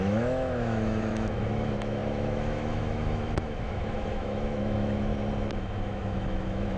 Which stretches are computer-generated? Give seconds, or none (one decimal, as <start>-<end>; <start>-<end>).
0.0-5.1; 5.6-6.8